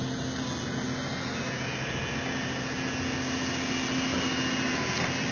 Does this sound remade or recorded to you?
recorded